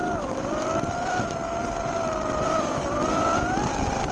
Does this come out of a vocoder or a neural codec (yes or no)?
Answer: no